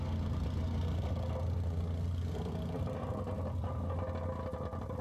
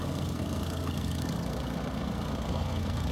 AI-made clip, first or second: second